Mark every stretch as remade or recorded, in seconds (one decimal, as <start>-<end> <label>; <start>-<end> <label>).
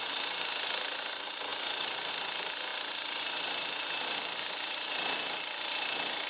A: 0.0-6.3 recorded